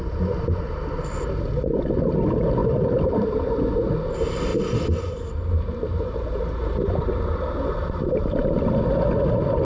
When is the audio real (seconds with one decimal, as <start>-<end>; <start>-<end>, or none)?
0.0-2.6; 3.5-4.5; 7.1-9.6